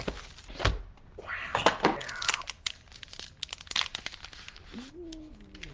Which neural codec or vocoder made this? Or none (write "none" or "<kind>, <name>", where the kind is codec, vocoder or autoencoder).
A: none